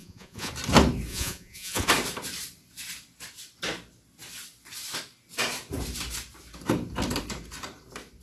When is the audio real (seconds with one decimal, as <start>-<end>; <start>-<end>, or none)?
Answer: 0.5-1.1; 1.9-8.2